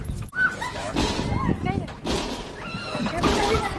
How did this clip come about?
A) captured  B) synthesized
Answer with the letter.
A